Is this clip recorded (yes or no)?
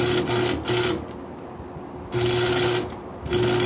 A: yes